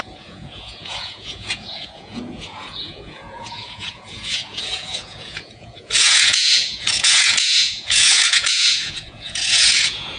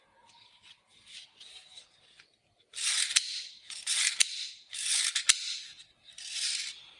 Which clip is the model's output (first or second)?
first